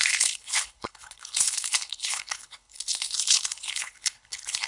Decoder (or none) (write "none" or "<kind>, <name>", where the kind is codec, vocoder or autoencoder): codec, HILCodec